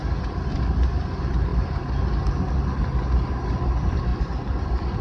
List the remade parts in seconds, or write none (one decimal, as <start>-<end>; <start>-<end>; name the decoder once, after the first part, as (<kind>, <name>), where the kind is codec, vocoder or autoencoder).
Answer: none